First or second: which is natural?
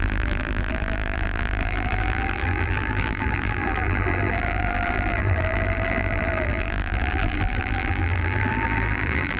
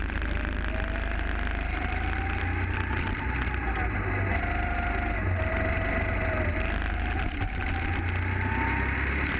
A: second